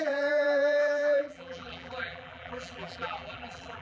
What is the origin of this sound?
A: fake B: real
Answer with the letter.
A